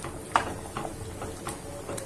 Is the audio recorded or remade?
recorded